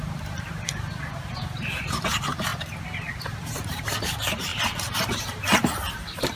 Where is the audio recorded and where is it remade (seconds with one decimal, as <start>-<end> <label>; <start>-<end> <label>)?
0.0-6.4 remade